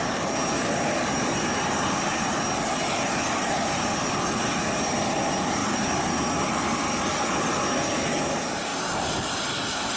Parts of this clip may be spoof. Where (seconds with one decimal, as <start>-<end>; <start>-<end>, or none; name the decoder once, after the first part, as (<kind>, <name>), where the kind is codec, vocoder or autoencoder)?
none